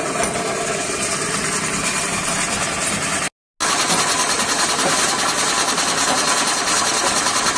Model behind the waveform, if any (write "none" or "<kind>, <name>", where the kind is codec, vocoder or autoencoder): none